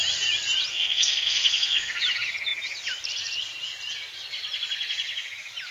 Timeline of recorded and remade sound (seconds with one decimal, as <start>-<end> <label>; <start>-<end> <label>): 0.0-0.7 recorded; 0.7-2.0 remade; 2.0-5.7 recorded